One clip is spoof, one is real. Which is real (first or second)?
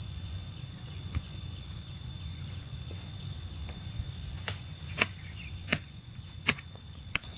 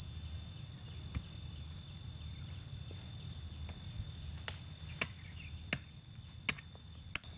second